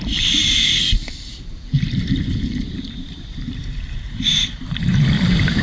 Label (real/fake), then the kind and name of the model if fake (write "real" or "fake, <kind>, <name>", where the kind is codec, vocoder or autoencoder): fake, vocoder, BigVGAN v2